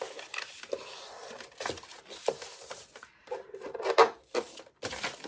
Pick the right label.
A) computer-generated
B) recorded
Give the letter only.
B